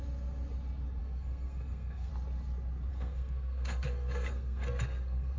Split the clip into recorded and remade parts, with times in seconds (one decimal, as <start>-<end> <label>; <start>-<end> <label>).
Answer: 0.0-1.0 recorded; 1.0-2.1 remade; 2.1-2.9 recorded; 2.9-5.4 remade